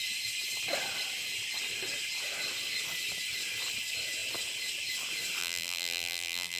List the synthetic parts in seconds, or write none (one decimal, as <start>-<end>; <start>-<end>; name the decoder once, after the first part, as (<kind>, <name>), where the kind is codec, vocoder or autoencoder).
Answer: 5.4-6.6 (vocoder, BigVGAN v2)